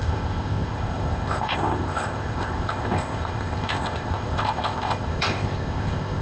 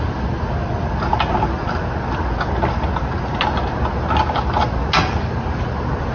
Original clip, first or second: second